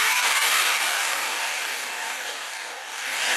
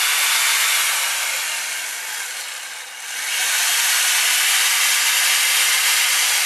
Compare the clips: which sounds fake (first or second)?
first